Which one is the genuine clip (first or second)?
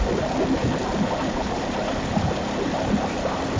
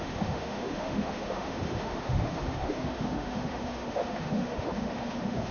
first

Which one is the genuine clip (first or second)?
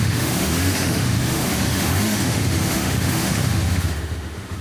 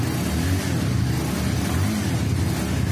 second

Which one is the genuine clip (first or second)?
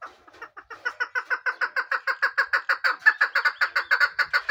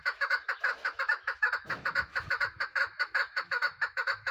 first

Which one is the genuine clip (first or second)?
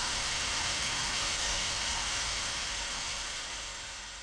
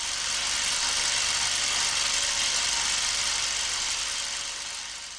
second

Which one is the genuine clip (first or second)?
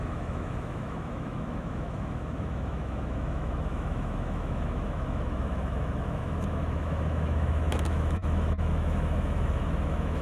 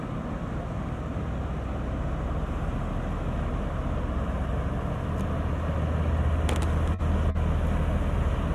second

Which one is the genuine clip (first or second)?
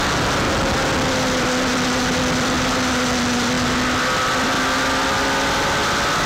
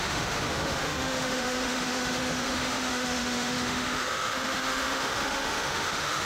first